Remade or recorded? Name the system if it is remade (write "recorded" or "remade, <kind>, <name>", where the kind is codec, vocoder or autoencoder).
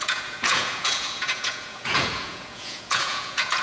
remade, vocoder, Vocos